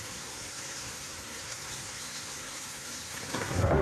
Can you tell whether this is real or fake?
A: fake